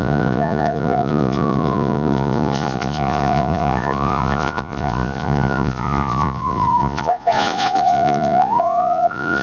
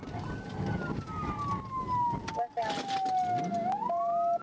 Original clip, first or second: second